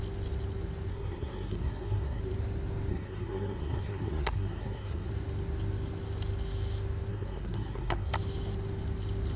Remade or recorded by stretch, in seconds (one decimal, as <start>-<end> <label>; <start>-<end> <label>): 0.0-0.9 recorded; 0.9-2.2 remade; 2.2-2.9 recorded; 2.9-5.1 remade; 5.1-7.1 recorded; 7.1-8.1 remade; 8.1-9.4 recorded